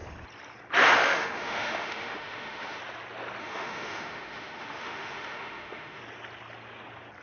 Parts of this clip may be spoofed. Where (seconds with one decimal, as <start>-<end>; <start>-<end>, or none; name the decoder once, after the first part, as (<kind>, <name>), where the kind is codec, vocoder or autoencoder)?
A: 1.0-2.8 (autoencoder, DAC-VAE); 3.4-6.0